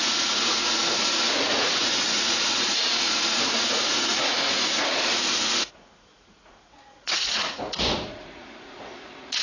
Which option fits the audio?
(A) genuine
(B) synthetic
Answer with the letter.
B